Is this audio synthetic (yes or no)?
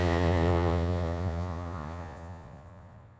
yes